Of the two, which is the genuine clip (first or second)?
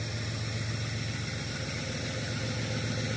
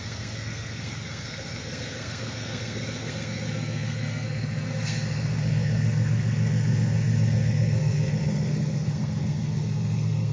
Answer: first